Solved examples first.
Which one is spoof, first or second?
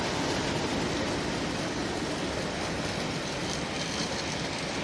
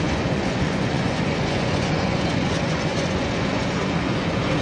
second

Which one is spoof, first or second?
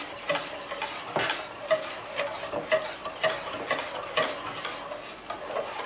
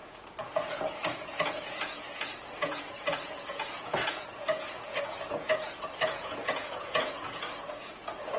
second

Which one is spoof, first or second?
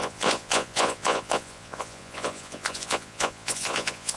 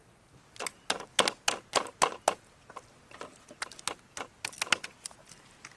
first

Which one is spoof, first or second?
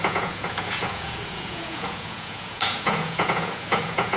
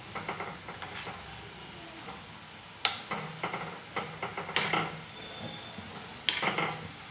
first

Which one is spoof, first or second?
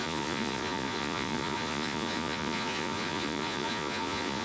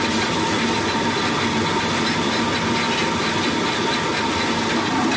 first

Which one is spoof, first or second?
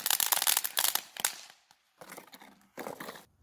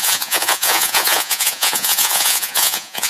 second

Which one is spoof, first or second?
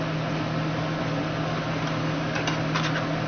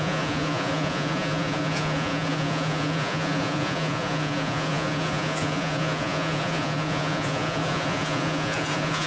second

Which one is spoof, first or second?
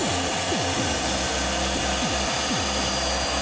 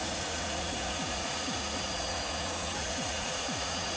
second